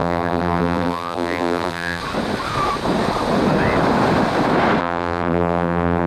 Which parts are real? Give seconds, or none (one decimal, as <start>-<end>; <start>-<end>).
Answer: 2.0-4.8